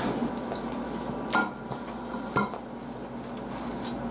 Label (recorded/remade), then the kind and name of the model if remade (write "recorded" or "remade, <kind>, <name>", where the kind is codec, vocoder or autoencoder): recorded